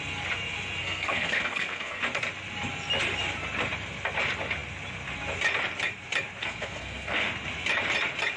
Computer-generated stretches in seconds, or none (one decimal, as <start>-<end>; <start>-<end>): 0.8-2.0; 6.4-7.3